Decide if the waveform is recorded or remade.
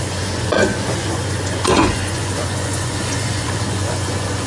remade